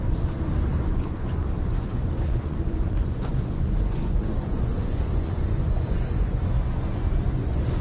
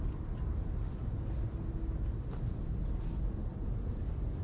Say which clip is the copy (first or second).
first